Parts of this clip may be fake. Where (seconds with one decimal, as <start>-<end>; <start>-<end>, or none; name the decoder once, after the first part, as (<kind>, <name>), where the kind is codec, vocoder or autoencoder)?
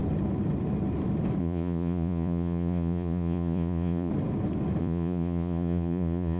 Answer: 1.4-4.1 (vocoder, Vocos); 4.8-6.4